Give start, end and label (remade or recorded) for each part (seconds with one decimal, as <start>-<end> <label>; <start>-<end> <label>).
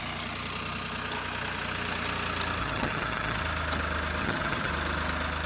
0.0-2.6 recorded; 2.6-3.4 remade; 3.4-4.2 recorded; 4.2-4.7 remade; 4.7-5.5 recorded